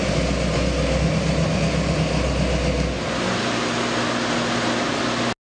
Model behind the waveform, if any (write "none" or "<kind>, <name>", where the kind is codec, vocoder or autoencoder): none